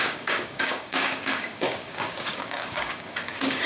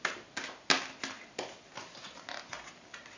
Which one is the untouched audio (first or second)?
second